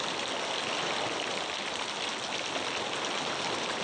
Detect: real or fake real